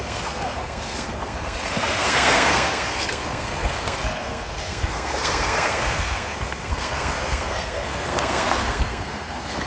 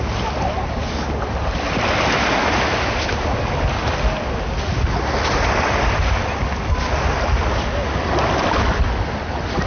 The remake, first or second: first